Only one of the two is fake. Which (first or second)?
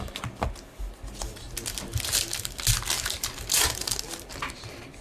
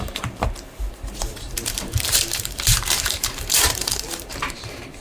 second